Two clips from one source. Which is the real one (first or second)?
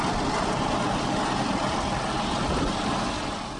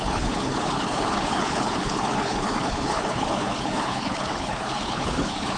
first